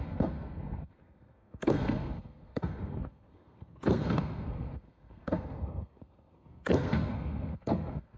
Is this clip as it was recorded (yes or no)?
no